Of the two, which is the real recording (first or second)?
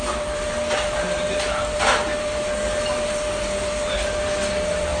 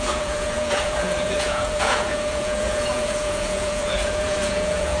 first